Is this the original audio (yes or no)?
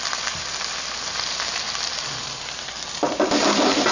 no